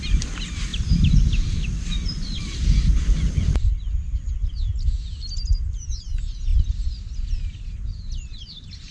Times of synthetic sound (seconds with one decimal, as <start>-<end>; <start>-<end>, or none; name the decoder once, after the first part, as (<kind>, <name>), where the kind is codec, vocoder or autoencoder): 0.0-4.4 (vocoder, BigVGAN v2); 5.5-8.9